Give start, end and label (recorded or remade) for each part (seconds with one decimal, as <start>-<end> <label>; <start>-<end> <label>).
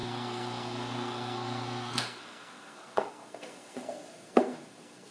0.0-5.1 remade